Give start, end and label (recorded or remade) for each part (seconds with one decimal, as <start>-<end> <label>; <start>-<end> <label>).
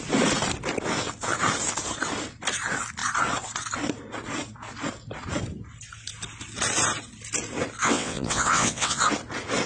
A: 0.0-7.8 recorded; 7.8-9.0 remade; 9.0-9.7 recorded